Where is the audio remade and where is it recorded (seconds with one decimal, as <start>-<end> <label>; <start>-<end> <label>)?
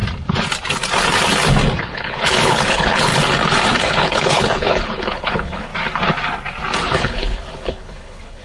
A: 0.0-1.8 recorded; 1.8-3.1 remade; 3.1-3.8 recorded; 3.8-5.7 remade; 5.7-6.9 recorded; 6.9-8.4 remade